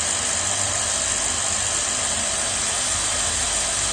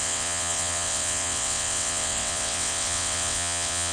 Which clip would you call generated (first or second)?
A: second